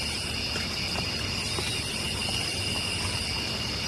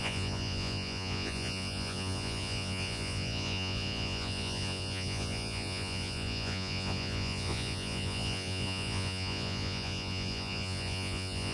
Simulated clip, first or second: second